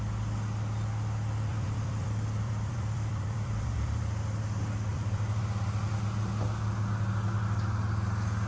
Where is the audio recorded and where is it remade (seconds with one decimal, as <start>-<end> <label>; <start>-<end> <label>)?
0.0-1.5 recorded; 1.5-4.0 remade; 4.0-4.9 recorded; 4.9-5.4 remade; 5.4-8.5 recorded